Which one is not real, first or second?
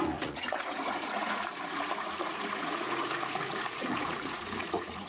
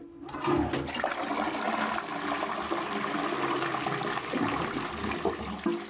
first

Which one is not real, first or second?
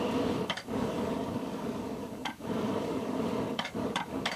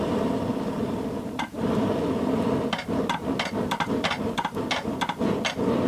first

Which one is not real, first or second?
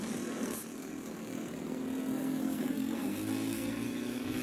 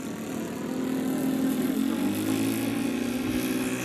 first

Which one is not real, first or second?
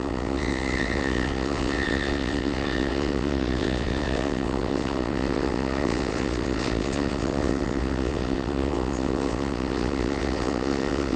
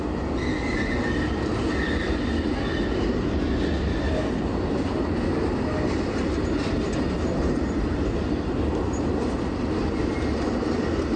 first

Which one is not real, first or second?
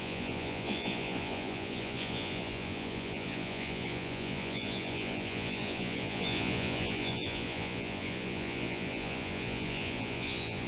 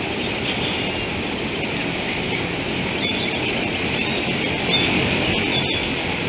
first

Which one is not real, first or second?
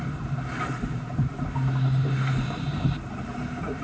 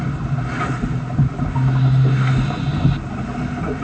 first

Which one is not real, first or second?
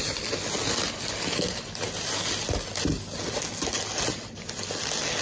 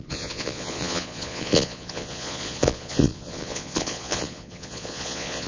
second